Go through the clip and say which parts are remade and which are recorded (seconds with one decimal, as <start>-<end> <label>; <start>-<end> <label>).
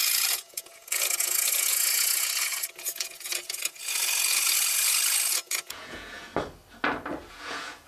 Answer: 0.0-6.3 remade; 6.3-7.3 recorded; 7.3-7.9 remade